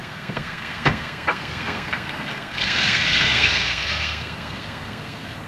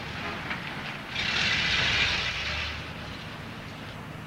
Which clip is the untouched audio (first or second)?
second